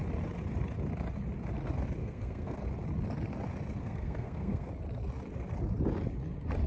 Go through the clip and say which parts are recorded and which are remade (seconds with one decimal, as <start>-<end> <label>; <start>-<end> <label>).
0.0-2.0 recorded; 2.0-2.6 remade; 2.6-3.8 recorded; 3.8-4.7 remade; 4.7-6.7 recorded